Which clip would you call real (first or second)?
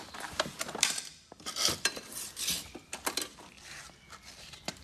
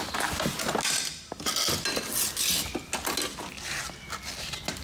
second